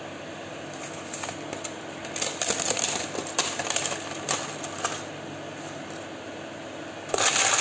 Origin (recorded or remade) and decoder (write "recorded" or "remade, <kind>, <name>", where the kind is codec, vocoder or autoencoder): recorded